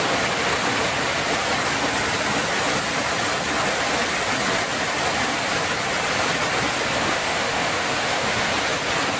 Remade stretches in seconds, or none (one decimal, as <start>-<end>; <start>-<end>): 7.0-8.5